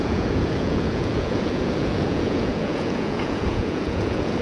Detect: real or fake fake